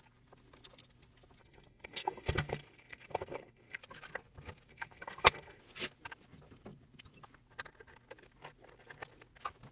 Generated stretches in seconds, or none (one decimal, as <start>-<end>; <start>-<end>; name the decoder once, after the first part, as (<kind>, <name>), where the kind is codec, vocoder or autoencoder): 1.4-3.8 (codec, SNAC); 4.7-5.6